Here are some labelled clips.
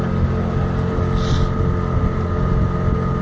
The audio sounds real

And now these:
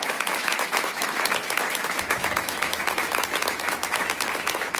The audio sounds fake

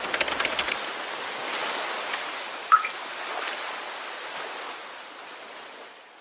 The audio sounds real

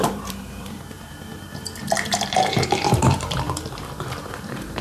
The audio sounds fake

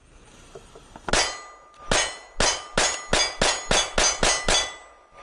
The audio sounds real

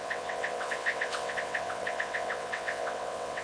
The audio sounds fake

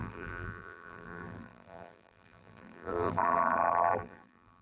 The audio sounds fake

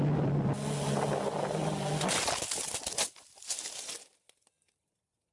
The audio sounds real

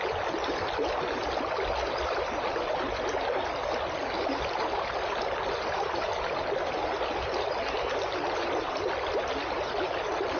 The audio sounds real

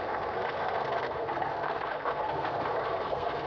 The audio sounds fake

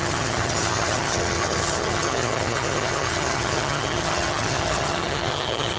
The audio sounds fake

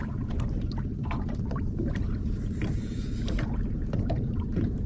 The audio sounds fake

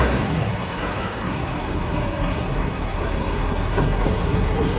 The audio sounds fake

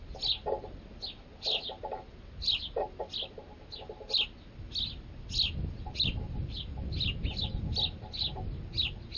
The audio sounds real